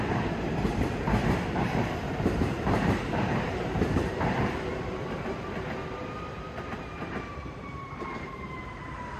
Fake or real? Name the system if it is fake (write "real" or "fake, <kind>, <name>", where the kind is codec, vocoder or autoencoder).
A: fake, vocoder, BigVGAN v2